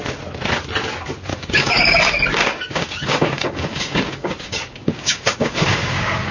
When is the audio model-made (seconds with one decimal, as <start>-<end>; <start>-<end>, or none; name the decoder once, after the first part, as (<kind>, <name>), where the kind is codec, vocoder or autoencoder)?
1.3-2.0 (codec, DAC); 2.4-6.3